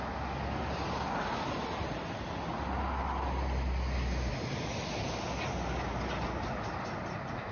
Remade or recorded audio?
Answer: recorded